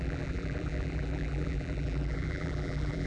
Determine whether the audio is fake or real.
fake